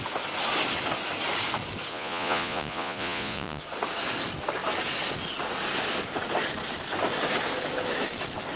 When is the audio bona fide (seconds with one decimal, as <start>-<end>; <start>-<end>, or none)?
0.0-1.9; 3.6-8.6